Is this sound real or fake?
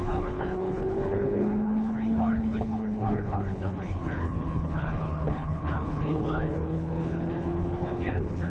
fake